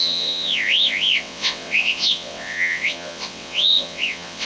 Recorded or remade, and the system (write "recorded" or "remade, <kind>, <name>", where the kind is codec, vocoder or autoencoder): remade, vocoder, WaveNeXt